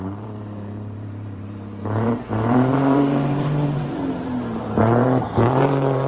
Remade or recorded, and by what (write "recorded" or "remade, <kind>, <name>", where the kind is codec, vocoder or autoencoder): remade, vocoder, BigVGAN v2